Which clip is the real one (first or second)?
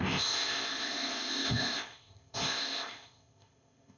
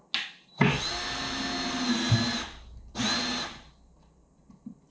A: second